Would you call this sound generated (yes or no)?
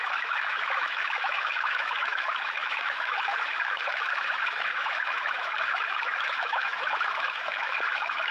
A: yes